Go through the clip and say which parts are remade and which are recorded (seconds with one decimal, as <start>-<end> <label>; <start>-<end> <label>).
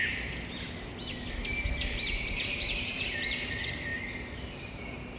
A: 0.0-1.4 recorded; 1.4-3.5 remade; 3.5-3.9 recorded; 3.9-4.8 remade; 4.8-5.2 recorded